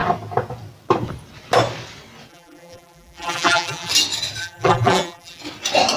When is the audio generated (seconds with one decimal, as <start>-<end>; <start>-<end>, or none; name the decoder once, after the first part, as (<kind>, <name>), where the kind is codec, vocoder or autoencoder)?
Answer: 2.3-3.9 (vocoder, BigVGAN v2); 4.4-5.4